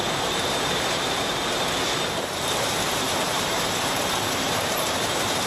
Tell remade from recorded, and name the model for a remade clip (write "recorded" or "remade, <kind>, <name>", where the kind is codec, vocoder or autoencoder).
remade, vocoder, BigVGAN v2